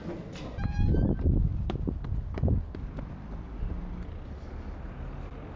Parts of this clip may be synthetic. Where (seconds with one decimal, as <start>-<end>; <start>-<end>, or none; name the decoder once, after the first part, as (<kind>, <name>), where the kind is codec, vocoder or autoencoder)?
1.5-4.9 (vocoder, BigVGAN v2)